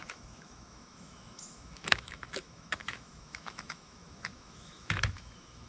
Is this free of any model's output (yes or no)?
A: no